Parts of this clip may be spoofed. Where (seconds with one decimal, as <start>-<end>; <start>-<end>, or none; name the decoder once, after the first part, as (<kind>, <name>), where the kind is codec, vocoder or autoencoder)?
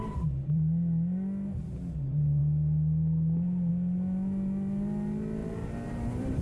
5.4-6.4 (vocoder, BigVGAN v2)